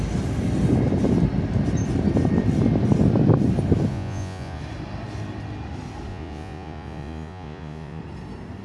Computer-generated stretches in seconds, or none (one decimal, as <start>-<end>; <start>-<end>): 3.9-4.6; 6.1-8.0